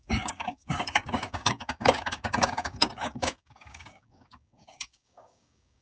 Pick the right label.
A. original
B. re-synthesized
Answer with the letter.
B